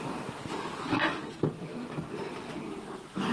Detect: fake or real real